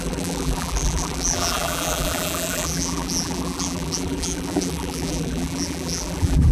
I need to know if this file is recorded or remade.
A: remade